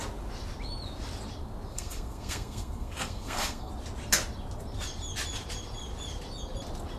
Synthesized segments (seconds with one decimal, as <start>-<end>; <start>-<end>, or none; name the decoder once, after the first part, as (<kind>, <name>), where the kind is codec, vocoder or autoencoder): 1.7-3.7 (codec, SNAC)